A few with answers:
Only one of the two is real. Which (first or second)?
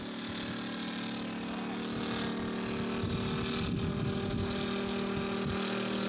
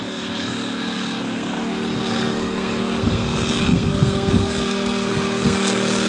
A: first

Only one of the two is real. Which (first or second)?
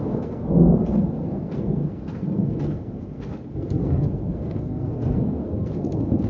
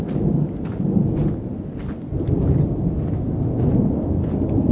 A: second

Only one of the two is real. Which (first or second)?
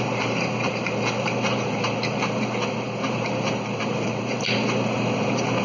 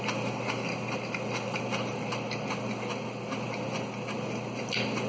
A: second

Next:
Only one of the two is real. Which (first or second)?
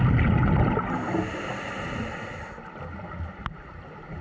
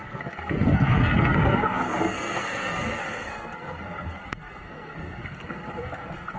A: first